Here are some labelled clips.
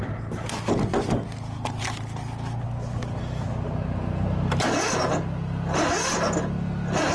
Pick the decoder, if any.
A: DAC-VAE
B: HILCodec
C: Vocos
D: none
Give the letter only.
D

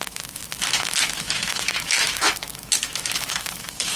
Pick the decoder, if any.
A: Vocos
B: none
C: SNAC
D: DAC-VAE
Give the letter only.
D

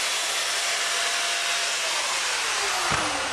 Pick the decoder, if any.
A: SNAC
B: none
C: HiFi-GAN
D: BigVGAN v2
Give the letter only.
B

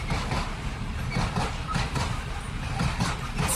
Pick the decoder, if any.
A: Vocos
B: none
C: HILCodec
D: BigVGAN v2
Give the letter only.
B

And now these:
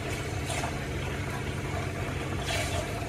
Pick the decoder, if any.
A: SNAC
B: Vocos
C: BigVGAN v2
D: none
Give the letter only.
D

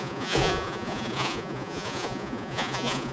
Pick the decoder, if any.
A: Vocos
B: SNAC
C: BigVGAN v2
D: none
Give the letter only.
A